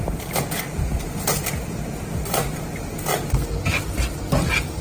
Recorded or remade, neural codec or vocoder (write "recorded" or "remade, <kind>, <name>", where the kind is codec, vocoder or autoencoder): recorded